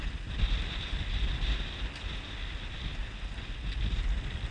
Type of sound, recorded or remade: recorded